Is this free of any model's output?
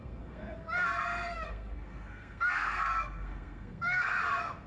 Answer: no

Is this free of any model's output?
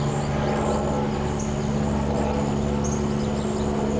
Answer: yes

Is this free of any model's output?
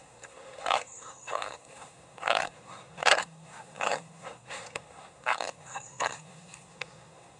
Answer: no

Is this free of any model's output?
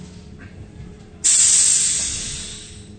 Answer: yes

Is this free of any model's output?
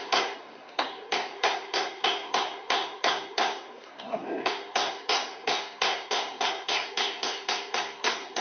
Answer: no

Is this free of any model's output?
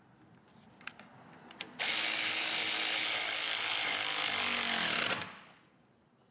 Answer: yes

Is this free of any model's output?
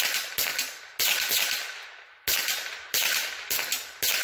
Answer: yes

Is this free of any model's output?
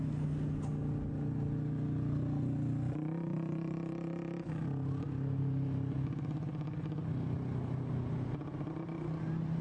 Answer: yes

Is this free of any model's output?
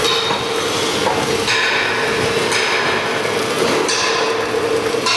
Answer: yes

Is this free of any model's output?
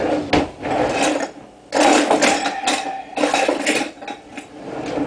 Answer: yes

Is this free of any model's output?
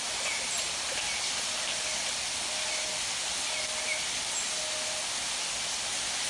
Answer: yes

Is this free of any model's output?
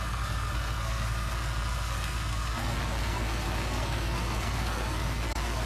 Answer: no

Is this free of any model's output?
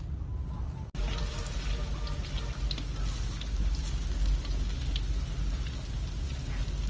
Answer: yes